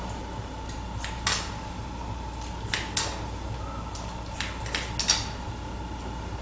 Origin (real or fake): real